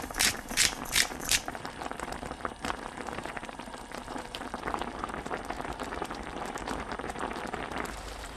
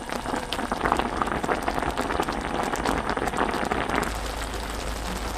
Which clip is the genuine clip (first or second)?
second